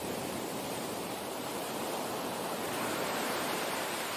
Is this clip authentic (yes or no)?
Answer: no